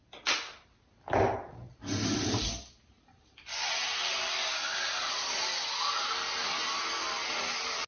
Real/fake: real